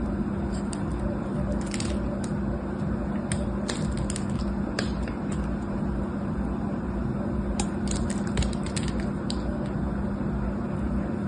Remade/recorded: recorded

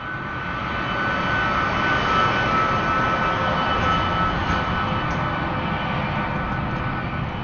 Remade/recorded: recorded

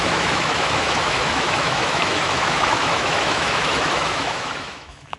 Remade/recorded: remade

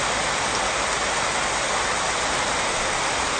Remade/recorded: recorded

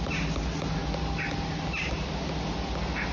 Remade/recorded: recorded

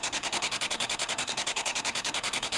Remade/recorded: remade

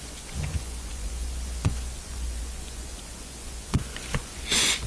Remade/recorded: remade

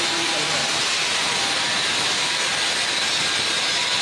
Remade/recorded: recorded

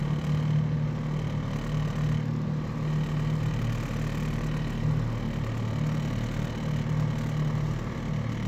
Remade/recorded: recorded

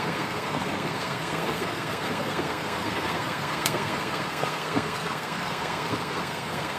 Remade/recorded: remade